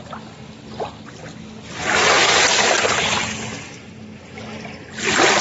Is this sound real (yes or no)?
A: yes